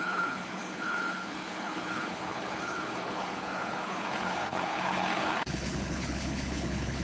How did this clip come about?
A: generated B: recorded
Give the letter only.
A